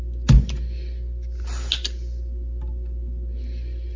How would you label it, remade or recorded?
recorded